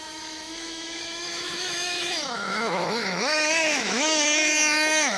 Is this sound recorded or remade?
remade